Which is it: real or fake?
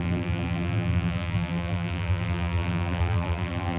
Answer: fake